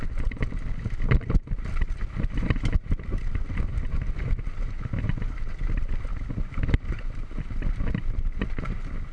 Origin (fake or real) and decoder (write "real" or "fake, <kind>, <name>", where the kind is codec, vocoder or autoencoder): real